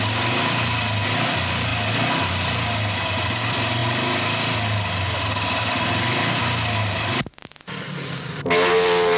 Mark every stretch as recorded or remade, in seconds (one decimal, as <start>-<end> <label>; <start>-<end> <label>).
0.0-9.2 recorded

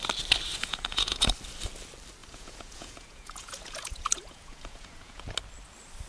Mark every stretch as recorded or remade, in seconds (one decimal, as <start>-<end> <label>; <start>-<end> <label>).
0.0-0.5 recorded; 0.5-1.2 remade; 1.2-2.2 recorded; 2.2-5.3 remade; 5.3-6.1 recorded

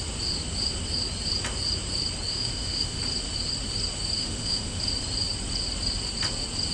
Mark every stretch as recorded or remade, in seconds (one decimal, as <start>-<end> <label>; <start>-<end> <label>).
0.0-2.3 recorded; 2.3-3.0 remade; 3.0-4.2 recorded; 4.2-4.8 remade; 4.8-6.7 recorded